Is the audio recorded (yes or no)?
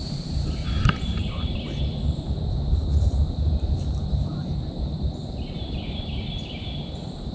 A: no